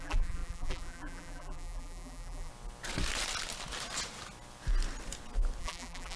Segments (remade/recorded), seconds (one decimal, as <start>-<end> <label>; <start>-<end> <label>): 0.0-2.5 remade; 2.5-5.6 recorded; 5.6-6.2 remade